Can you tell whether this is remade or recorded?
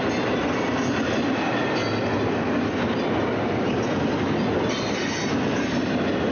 recorded